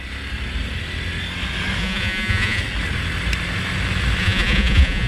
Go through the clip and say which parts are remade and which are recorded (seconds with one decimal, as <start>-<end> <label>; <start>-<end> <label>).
0.0-1.8 recorded; 1.8-2.6 remade; 2.6-4.2 recorded; 4.2-5.1 remade